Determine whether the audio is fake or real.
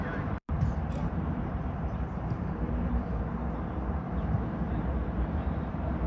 fake